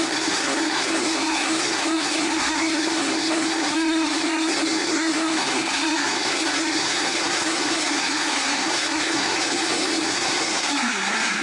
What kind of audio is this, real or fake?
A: fake